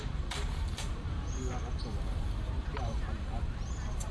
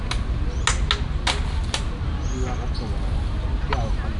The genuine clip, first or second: second